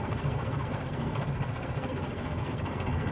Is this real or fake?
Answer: fake